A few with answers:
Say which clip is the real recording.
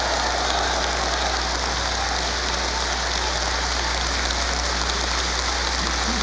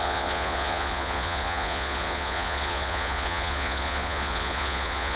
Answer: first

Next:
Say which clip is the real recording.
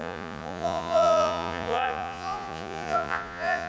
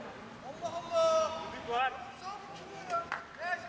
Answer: second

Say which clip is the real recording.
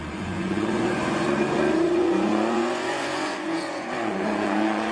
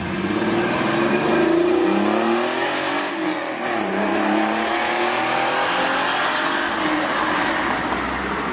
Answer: second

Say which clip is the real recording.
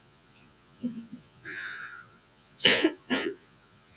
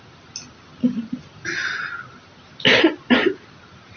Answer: second